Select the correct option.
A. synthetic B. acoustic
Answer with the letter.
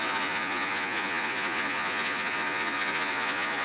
A